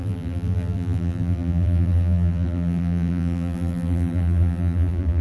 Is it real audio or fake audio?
fake